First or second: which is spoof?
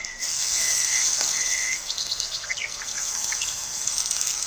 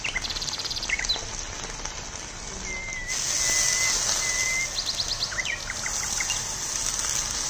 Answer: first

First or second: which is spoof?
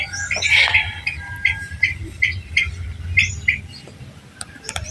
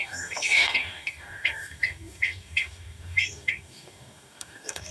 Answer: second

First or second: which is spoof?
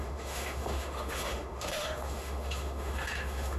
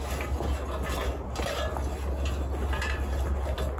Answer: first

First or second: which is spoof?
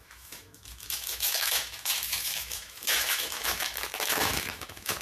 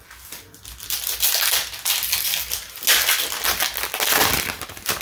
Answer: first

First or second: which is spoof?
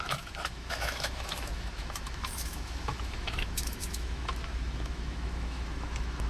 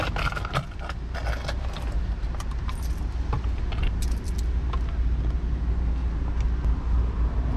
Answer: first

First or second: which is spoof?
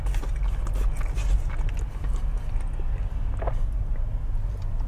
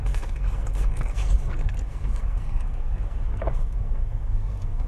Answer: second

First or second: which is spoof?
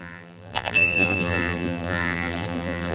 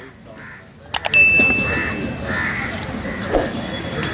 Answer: first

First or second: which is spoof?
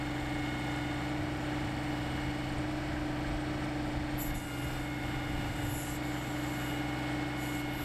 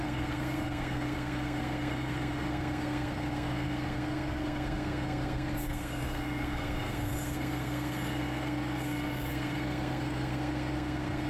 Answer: second